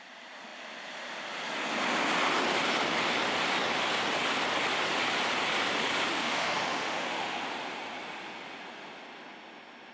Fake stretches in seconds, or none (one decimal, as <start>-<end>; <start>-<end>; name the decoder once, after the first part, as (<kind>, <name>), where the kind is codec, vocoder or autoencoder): 6.1-7.4 (autoencoder, DAC-VAE)